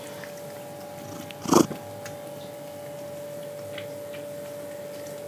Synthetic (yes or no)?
no